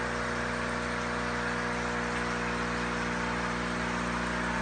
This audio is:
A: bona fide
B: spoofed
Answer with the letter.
A